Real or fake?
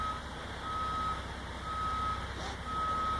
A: real